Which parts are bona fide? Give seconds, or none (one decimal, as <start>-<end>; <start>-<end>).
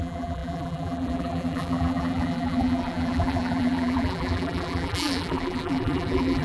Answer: none